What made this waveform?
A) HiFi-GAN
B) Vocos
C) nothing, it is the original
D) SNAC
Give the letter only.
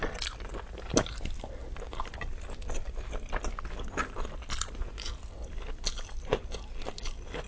C